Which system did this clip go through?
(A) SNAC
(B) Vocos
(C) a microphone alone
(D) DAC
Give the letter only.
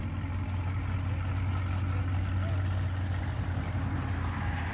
C